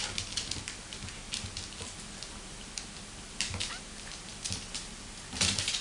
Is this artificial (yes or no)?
no